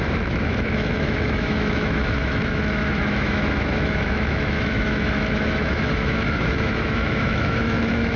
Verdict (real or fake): fake